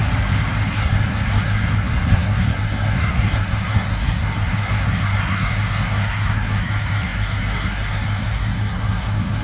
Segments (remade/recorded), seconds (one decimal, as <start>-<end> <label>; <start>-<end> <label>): 0.0-0.7 recorded; 0.7-9.4 remade